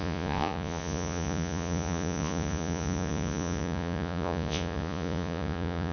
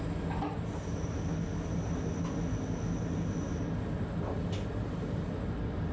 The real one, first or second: second